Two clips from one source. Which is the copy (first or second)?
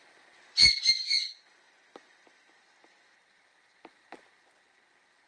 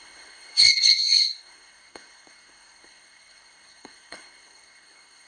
second